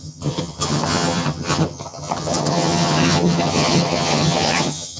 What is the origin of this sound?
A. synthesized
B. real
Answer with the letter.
A